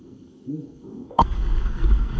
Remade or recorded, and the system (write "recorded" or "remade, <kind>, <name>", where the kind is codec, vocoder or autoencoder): remade, codec, SNAC